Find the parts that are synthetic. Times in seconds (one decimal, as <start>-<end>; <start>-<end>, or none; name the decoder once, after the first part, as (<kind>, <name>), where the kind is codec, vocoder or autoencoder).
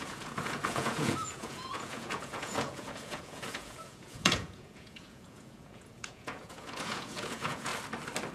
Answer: 0.0-7.7 (vocoder, Vocos)